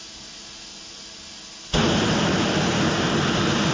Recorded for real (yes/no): yes